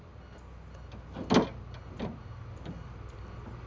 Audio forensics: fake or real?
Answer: real